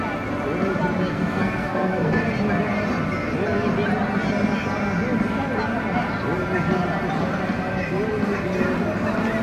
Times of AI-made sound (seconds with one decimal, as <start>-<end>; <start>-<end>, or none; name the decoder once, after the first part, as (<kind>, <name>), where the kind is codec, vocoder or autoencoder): 1.1-2.2 (codec, SNAC)